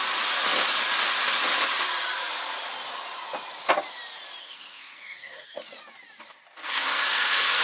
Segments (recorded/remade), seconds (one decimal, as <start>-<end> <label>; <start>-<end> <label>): 0.0-4.4 recorded; 4.4-5.6 remade; 5.6-6.6 recorded; 6.6-7.6 remade